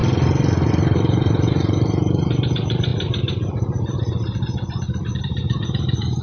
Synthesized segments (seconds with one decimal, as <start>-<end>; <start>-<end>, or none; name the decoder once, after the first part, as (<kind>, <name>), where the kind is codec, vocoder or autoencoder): 0.7-2.9 (vocoder, BigVGAN v2); 5.2-6.2